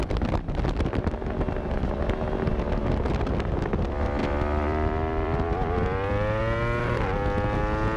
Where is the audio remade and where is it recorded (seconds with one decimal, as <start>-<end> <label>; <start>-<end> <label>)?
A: 0.0-4.2 recorded; 4.2-6.4 remade; 6.4-8.0 recorded